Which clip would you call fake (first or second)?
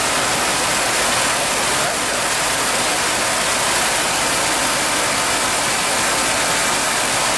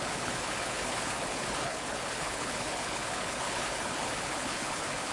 second